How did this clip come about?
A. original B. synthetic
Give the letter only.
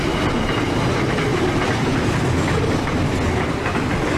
A